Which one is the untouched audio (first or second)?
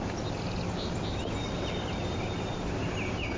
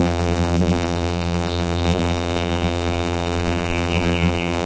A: first